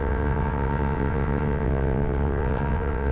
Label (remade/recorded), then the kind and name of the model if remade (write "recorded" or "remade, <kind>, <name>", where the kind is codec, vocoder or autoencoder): remade, vocoder, WaveNeXt